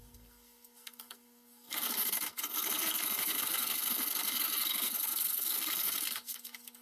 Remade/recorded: remade